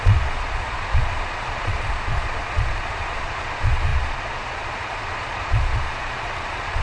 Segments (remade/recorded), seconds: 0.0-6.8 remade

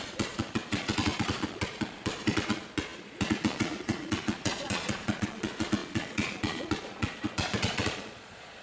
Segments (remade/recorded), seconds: 0.0-8.6 remade

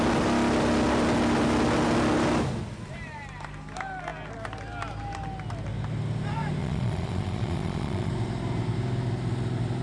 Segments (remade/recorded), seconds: 0.0-6.6 recorded; 6.6-8.1 remade; 8.1-9.8 recorded